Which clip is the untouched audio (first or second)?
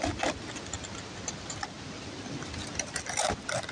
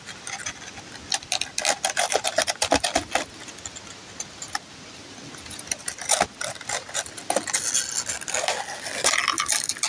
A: second